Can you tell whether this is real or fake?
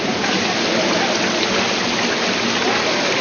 real